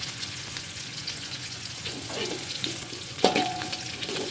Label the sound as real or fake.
fake